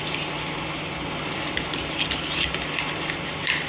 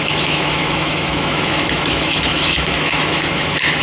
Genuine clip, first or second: first